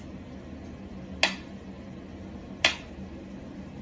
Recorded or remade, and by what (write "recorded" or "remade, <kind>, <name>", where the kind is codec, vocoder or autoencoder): recorded